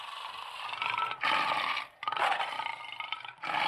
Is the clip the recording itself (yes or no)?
no